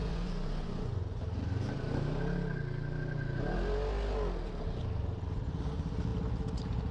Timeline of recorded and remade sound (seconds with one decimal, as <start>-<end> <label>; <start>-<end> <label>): 0.0-1.2 remade; 1.2-6.9 recorded